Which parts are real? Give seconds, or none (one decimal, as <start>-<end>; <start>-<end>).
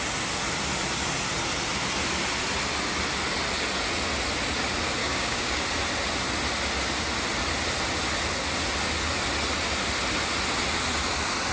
0.0-5.0; 5.6-11.5